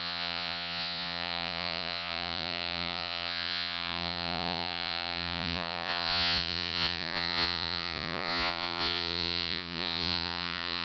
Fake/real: fake